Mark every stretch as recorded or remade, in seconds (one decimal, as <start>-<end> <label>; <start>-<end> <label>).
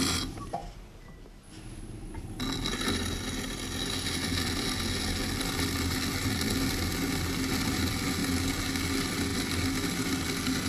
0.0-10.7 recorded